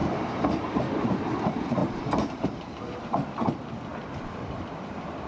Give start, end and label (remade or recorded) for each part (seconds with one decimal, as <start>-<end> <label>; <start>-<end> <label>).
0.0-1.8 recorded; 1.8-3.0 remade; 3.0-3.9 recorded; 3.9-5.3 remade